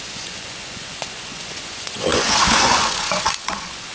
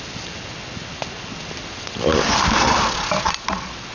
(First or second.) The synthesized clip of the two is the first